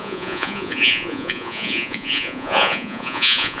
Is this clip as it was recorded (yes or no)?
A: no